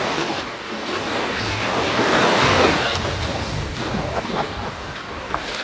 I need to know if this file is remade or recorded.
remade